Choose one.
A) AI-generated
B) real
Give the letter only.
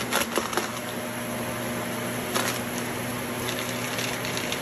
B